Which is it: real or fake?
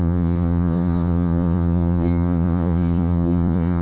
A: fake